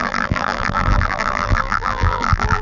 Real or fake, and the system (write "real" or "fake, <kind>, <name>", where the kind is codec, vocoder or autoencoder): fake, vocoder, BigVGAN v2